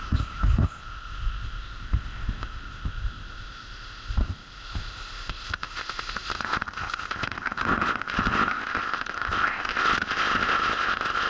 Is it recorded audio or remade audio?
remade